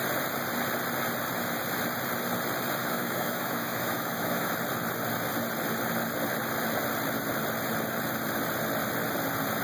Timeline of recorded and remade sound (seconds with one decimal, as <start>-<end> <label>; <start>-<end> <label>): 0.0-2.8 recorded; 2.8-4.5 remade; 4.5-9.6 recorded